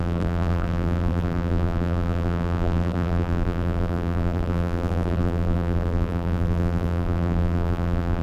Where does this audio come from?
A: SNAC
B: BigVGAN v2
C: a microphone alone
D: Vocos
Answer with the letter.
B